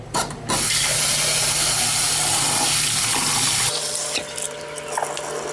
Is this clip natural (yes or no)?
yes